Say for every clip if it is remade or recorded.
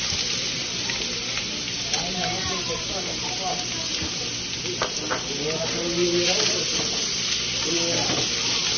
recorded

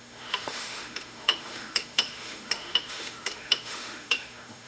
remade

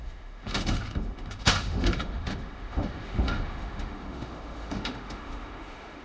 remade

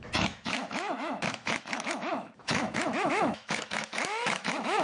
remade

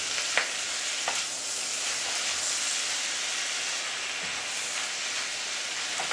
recorded